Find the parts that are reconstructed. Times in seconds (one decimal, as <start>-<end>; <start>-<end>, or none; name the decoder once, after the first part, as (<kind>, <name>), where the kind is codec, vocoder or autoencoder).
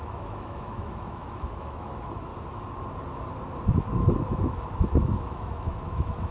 0.0-2.3 (autoencoder, DAC-VAE); 4.2-6.3